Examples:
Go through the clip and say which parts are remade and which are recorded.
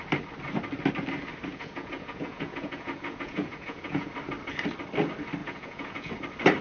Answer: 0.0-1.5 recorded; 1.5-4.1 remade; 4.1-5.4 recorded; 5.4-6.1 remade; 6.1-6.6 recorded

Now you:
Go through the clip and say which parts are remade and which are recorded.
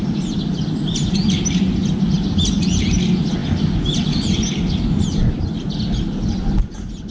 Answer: 0.0-7.1 recorded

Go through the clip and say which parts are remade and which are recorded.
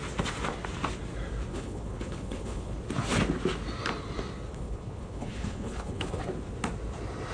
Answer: 0.0-1.5 recorded; 1.5-2.8 remade; 2.8-4.5 recorded; 4.5-6.2 remade; 6.2-7.3 recorded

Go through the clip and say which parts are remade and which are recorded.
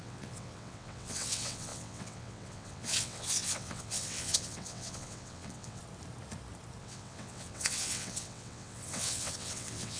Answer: 0.0-5.8 remade; 5.8-6.8 recorded; 6.8-10.0 remade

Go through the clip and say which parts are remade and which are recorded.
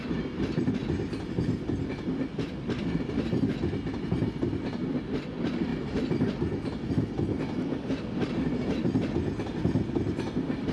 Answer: 0.0-10.7 recorded